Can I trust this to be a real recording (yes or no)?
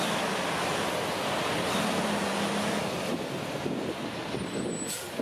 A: yes